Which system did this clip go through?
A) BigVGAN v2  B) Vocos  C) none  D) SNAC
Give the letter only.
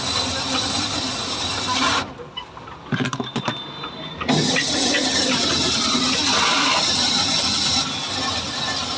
C